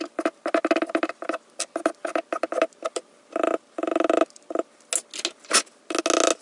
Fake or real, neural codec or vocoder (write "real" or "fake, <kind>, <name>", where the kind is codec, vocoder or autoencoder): real